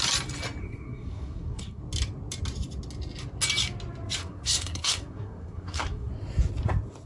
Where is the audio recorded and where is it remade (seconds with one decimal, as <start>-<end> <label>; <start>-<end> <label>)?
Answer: 0.0-0.6 recorded; 0.6-1.8 remade; 1.8-4.2 recorded; 4.2-6.1 remade; 6.1-7.1 recorded